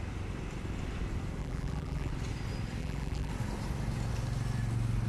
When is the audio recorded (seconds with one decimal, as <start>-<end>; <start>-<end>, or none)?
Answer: 0.0-1.4; 2.1-2.8; 3.3-5.1